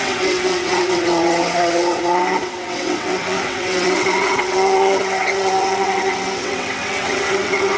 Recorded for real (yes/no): no